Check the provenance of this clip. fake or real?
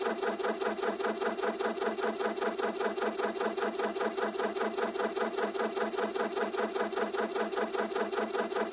real